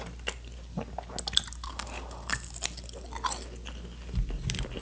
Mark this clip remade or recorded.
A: recorded